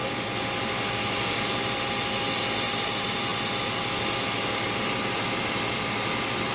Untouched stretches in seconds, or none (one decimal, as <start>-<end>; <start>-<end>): 0.0-6.5